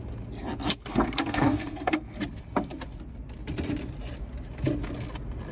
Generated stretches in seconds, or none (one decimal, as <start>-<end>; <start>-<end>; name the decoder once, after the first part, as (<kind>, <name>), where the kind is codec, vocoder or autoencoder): 0.9-2.2 (codec, SNAC)